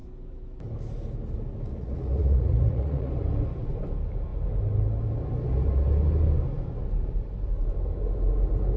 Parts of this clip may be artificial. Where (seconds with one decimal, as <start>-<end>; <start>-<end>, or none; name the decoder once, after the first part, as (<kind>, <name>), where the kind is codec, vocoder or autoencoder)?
1.7-3.1 (vocoder, Vocos)